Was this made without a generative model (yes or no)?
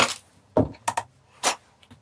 yes